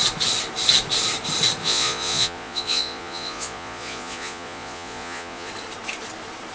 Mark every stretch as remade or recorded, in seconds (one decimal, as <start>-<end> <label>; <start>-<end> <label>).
0.0-1.6 recorded; 1.6-5.5 remade; 5.5-6.5 recorded